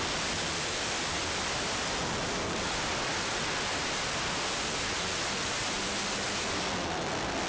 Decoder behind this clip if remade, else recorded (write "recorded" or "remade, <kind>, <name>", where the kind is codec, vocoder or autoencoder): recorded